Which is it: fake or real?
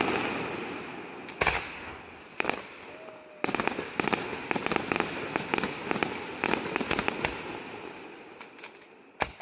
real